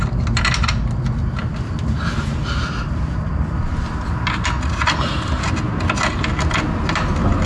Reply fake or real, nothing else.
real